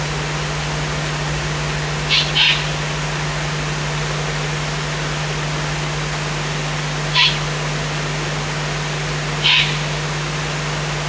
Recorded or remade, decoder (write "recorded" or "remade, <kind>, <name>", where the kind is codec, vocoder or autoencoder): recorded